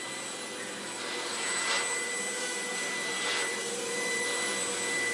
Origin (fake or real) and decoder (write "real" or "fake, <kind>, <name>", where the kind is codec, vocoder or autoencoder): fake, vocoder, BigVGAN v2